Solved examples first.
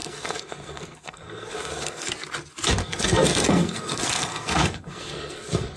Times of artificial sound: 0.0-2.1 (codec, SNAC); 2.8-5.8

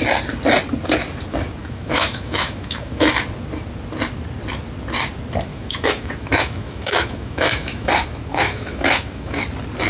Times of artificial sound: 1.6-3.1 (autoencoder, DAC-VAE); 5.5-7.9; 8.3-9.4

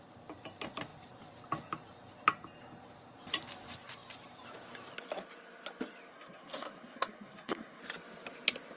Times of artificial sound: 6.1-7.8 (codec, SNAC)